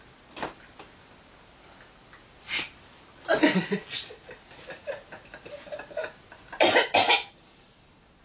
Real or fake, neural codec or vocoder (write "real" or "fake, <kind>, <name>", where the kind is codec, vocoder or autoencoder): real